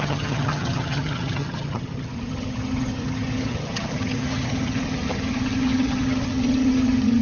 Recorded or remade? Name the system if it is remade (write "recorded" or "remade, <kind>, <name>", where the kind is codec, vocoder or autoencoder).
remade, vocoder, HiFi-GAN